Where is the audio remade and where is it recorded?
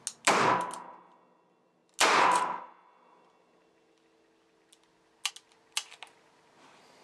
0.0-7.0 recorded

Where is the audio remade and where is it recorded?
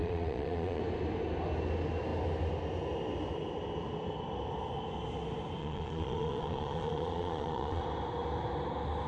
0.0-0.8 remade; 0.8-5.6 recorded; 5.6-7.8 remade; 7.8-9.1 recorded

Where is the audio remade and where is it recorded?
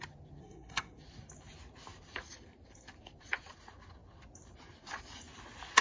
0.0-0.4 recorded; 0.4-1.0 remade; 1.0-5.8 recorded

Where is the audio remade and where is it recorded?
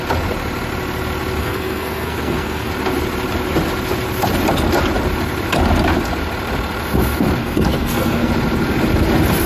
0.0-1.4 recorded; 1.4-2.7 remade; 2.7-7.4 recorded; 7.4-8.3 remade; 8.3-9.5 recorded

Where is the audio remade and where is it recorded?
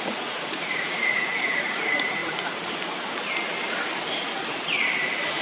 0.0-2.2 remade; 2.2-5.4 recorded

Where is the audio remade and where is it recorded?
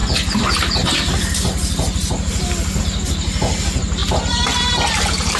0.0-5.4 recorded